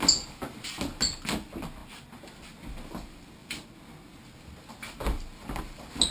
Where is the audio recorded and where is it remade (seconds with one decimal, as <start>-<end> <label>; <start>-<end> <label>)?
0.0-6.1 recorded